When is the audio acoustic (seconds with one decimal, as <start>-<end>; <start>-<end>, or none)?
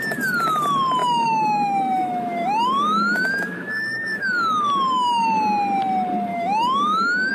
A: 0.0-1.0; 4.2-6.3